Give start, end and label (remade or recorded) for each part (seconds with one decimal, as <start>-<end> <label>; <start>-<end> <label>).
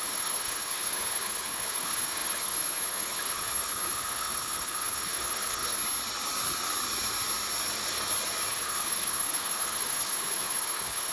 0.0-5.8 remade; 5.8-8.5 recorded; 8.5-11.1 remade